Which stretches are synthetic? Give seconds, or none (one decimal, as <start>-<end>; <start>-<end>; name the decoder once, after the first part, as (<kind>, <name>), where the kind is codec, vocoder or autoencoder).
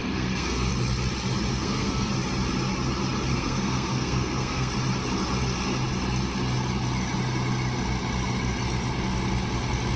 0.0-0.7 (codec, SNAC); 1.5-2.1; 3.3-4.7